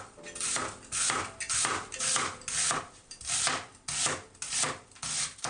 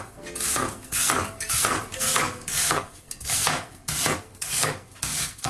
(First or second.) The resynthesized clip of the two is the second